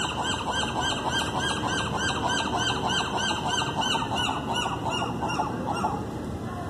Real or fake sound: real